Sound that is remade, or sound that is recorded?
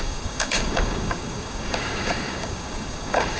remade